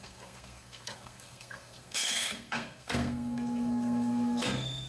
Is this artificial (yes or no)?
yes